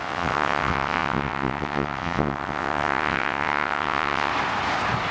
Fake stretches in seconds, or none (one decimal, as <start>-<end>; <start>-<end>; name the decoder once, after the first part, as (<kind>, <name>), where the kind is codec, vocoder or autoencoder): 0.0-4.3 (vocoder, WaveNeXt)